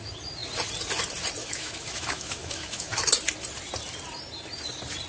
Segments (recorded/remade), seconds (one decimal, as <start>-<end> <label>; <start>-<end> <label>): 0.0-1.4 recorded; 1.4-2.9 remade; 2.9-5.1 recorded